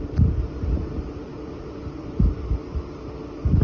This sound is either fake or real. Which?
real